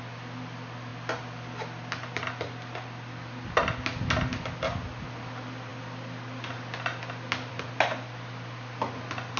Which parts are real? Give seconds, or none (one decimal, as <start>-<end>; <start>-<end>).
0.0-9.4